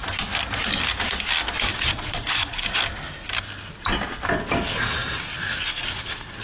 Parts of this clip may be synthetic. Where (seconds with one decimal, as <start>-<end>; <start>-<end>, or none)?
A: 1.7-2.8